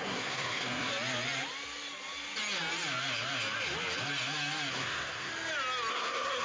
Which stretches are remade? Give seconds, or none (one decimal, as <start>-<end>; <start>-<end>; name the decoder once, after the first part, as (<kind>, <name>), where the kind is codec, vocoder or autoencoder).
0.0-0.9 (codec, SNAC); 4.7-5.3; 5.9-6.4

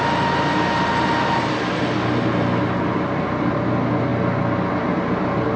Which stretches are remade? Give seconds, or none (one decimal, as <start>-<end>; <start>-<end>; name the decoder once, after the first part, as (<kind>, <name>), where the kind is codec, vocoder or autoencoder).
none

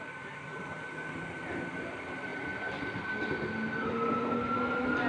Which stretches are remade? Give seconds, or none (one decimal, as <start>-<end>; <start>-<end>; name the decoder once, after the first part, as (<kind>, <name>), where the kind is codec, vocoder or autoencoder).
none

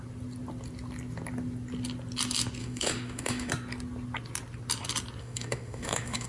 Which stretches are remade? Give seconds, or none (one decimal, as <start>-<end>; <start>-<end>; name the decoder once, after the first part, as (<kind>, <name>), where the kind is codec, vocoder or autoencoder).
2.6-3.5 (autoencoder, DAC-VAE); 5.2-6.3